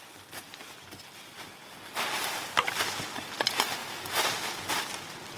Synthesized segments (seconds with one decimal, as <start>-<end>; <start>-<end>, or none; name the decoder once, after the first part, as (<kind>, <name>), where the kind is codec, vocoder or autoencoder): none